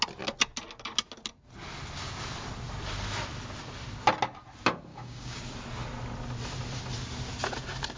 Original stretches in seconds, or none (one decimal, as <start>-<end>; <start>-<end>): 0.0-4.9; 5.4-8.0